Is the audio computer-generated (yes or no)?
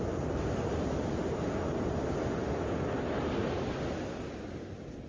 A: no